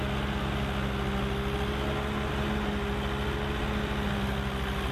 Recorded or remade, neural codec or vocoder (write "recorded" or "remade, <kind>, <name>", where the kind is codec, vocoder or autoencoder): recorded